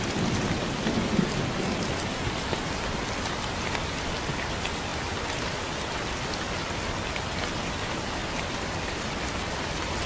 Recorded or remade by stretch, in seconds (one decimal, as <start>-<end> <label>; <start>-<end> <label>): 0.0-8.2 recorded; 8.2-9.1 remade; 9.1-10.1 recorded